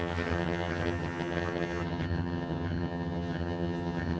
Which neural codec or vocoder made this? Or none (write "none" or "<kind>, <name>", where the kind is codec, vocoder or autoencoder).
vocoder, HiFi-GAN